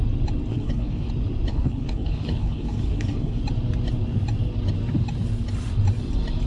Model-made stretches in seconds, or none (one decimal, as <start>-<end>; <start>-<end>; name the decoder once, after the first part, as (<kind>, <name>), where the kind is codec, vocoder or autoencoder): 0.5-1.1 (codec, HILCodec); 1.5-3.4